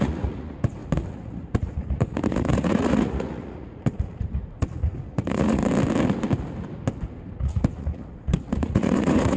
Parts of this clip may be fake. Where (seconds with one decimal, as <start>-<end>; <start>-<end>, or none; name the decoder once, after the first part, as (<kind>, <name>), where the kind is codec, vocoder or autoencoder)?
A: 0.0-5.6 (vocoder, Vocos); 7.3-9.4